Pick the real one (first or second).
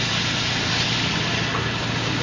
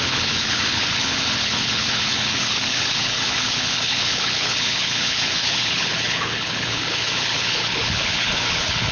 first